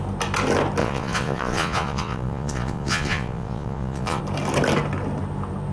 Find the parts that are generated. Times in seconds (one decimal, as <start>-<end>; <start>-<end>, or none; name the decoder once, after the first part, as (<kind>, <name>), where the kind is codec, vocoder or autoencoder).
0.8-4.2 (vocoder, Vocos)